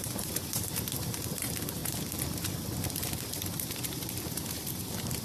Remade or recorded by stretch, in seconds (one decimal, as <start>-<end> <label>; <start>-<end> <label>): 0.0-1.8 remade; 1.8-3.3 recorded; 3.3-5.2 remade